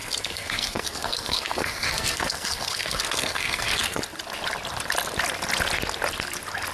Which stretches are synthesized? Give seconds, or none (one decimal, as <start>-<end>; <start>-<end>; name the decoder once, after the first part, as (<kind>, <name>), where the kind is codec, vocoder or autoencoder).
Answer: 0.0-4.0 (codec, SNAC)